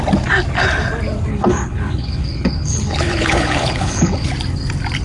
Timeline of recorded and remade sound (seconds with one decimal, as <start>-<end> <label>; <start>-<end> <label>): 0.0-1.3 recorded; 1.3-4.3 remade; 4.3-5.0 recorded